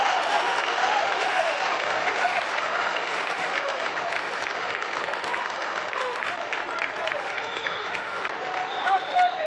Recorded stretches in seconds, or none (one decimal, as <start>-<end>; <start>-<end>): 6.6-7.2